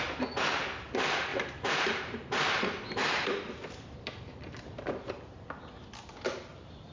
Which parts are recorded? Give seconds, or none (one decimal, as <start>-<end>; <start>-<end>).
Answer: 0.0-1.3; 5.4-6.9